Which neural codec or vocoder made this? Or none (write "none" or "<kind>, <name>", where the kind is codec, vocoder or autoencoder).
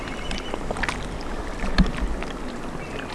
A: none